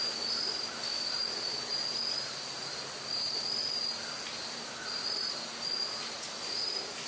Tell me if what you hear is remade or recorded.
recorded